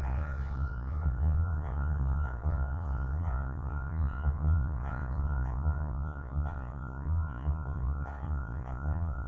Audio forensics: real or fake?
fake